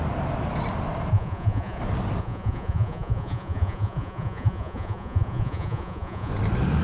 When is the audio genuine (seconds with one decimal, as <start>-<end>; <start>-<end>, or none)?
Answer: 0.0-1.1; 1.8-2.2; 6.3-6.8